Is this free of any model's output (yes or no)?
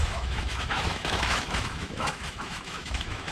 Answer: no